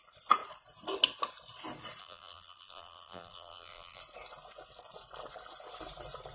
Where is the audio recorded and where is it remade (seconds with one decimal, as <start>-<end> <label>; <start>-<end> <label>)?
0.0-2.0 recorded; 2.0-4.0 remade; 4.0-6.3 recorded